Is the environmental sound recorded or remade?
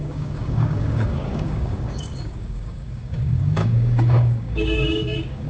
remade